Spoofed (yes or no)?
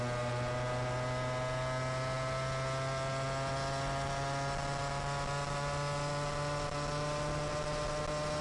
no